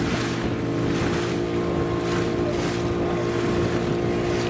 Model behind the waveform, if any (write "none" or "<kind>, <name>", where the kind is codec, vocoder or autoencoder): none